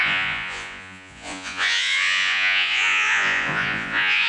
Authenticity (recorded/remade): remade